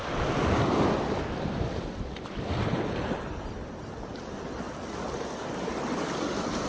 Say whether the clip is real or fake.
real